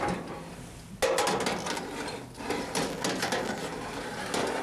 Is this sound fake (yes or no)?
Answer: no